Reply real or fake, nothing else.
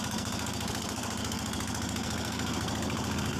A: fake